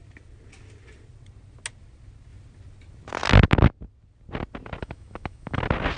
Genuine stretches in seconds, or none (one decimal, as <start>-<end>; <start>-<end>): 0.0-4.8; 5.6-6.0